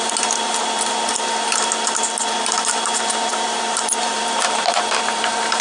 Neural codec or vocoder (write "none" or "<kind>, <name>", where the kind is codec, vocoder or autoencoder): vocoder, BigVGAN v2